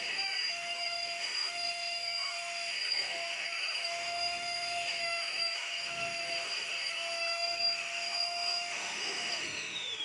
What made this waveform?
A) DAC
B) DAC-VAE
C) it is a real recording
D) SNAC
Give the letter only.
B